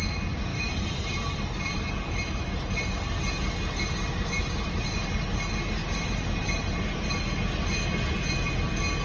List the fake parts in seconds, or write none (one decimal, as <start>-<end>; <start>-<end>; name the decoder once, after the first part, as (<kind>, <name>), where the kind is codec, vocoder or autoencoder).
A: 0.5-3.2 (vocoder, BigVGAN v2); 5.8-6.8